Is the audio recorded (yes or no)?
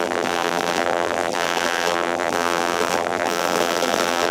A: no